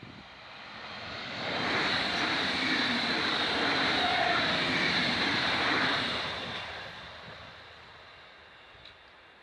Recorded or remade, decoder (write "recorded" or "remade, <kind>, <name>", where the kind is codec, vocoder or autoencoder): remade, vocoder, BigVGAN v2